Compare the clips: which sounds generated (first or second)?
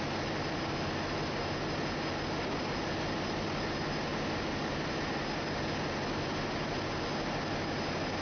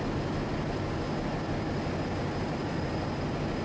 second